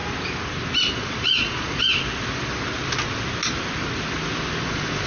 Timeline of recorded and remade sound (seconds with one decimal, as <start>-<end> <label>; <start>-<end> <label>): 0.0-0.9 recorded; 0.9-1.8 remade; 1.8-4.6 recorded; 4.6-5.1 remade